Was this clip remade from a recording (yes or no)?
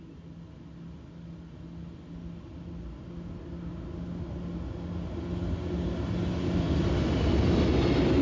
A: no